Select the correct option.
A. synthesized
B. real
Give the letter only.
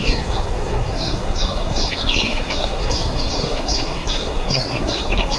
A